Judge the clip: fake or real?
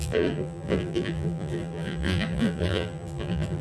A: fake